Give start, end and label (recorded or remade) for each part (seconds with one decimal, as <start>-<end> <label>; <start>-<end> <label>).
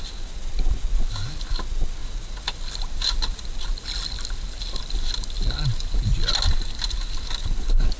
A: 0.0-8.0 recorded